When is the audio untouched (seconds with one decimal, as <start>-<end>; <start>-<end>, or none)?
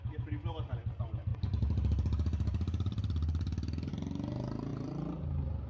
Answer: 0.0-1.3; 3.9-4.7